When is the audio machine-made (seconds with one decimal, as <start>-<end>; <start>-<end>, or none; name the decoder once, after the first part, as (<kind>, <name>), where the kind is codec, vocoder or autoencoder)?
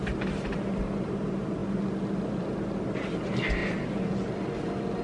none